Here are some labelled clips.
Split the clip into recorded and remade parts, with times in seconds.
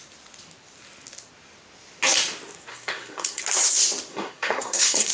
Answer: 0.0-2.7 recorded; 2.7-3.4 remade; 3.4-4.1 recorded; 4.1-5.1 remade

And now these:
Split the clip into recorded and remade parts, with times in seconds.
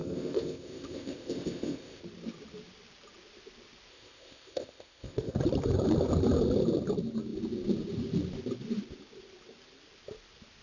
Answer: 0.0-2.0 remade; 2.0-3.9 recorded; 3.9-5.4 remade; 5.4-10.6 recorded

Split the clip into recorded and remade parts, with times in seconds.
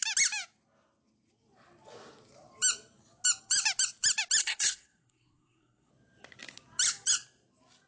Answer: 0.0-4.4 recorded; 4.4-5.9 remade; 5.9-7.9 recorded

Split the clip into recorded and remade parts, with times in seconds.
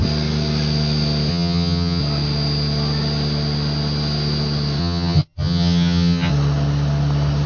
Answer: 0.0-1.3 recorded; 1.3-2.0 remade; 2.0-4.8 recorded; 4.8-6.3 remade; 6.3-7.5 recorded